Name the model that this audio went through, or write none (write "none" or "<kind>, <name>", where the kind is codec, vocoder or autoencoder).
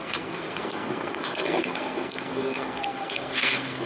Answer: codec, SNAC